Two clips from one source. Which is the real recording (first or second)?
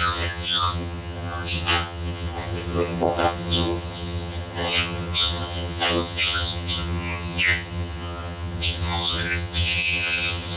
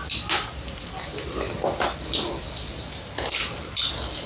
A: second